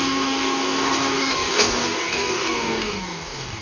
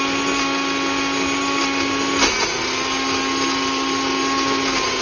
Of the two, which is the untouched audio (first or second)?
second